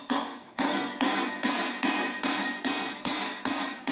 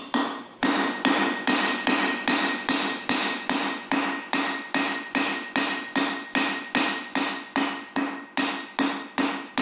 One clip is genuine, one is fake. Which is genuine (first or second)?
second